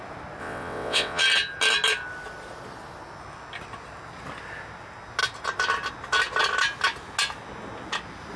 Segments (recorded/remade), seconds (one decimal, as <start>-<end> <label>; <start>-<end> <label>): 0.0-0.4 recorded; 0.4-1.2 remade; 1.2-8.4 recorded